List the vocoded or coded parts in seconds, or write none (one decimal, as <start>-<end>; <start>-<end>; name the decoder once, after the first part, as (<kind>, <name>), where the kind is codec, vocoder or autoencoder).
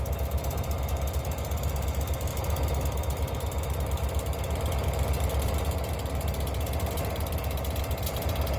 none